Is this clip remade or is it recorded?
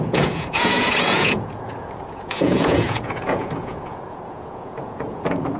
remade